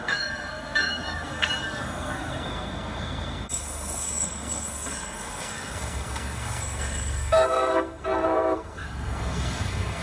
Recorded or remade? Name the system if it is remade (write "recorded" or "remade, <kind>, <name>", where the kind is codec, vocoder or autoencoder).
remade, codec, SNAC